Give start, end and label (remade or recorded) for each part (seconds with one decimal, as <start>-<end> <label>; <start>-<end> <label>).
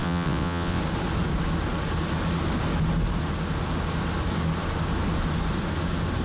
0.0-0.8 remade; 0.8-6.2 recorded